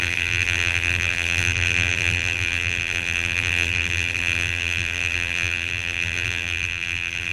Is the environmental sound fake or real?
fake